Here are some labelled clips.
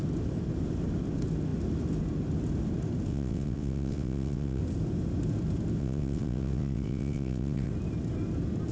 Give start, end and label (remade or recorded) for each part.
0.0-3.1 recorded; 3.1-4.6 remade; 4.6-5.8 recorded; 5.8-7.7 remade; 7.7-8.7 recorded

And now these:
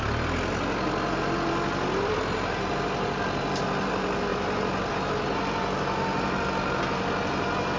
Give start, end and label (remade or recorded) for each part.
0.0-7.8 recorded

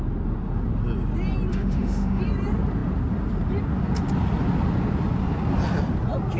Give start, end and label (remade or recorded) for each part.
0.0-1.5 recorded; 1.5-2.2 remade; 2.2-6.4 recorded

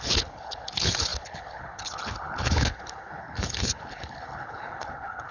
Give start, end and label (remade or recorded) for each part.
0.0-5.3 remade

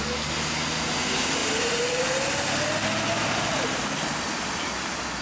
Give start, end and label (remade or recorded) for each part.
0.0-5.2 recorded